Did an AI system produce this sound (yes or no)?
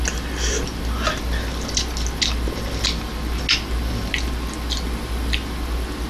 no